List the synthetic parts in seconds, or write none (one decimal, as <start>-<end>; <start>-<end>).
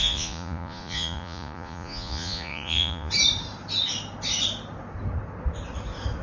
0.0-3.1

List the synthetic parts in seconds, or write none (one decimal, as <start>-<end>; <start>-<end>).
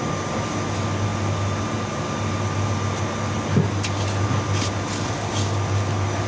none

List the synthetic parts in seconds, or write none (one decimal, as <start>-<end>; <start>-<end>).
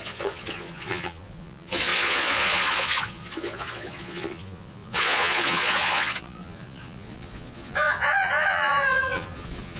0.0-9.8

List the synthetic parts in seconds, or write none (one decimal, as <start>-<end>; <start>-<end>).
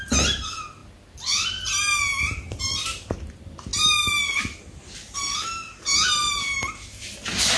none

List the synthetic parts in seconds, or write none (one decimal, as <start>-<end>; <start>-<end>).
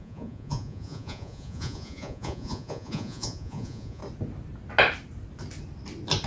0.0-4.0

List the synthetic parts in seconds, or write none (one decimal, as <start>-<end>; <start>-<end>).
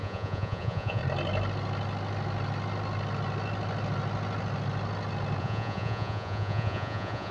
0.0-1.0; 5.4-7.3